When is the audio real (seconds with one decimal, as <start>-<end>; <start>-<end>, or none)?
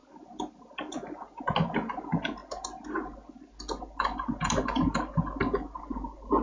0.0-6.4